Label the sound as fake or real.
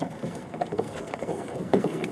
fake